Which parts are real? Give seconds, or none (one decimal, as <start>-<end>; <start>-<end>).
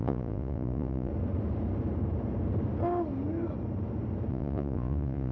1.1-4.3